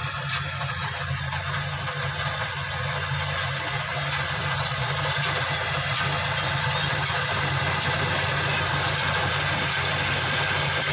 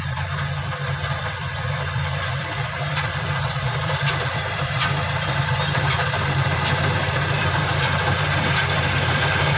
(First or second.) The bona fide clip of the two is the first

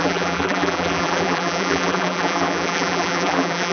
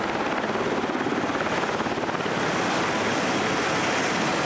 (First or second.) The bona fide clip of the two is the second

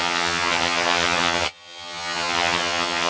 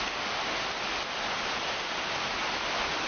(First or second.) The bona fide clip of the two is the second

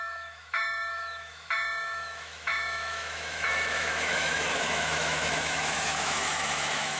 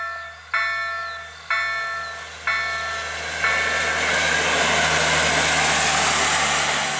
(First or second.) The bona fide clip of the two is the second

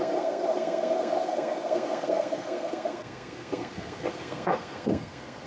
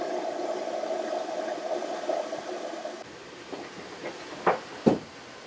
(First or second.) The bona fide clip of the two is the second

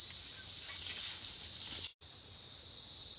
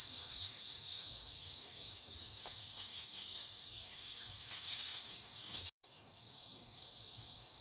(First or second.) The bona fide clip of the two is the first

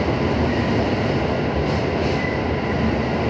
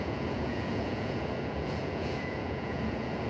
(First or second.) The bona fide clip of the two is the first